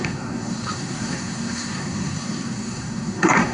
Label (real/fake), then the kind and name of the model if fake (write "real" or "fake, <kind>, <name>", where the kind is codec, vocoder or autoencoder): fake, codec, SNAC